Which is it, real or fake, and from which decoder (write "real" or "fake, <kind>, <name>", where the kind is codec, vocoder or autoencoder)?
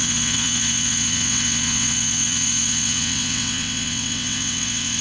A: fake, vocoder, WaveNeXt